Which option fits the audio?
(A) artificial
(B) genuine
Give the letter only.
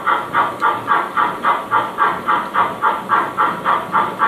B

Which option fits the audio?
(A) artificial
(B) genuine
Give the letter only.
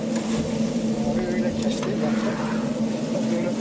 B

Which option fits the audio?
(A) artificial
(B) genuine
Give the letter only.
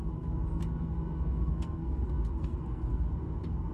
A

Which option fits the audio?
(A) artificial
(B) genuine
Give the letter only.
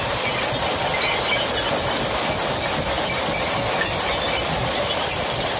B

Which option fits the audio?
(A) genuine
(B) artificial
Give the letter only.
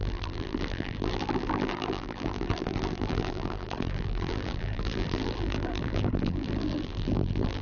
B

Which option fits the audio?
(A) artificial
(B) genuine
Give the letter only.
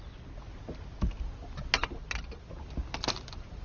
B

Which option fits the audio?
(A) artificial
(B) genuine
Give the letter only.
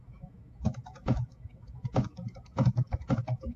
A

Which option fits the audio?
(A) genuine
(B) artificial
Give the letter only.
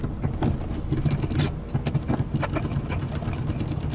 A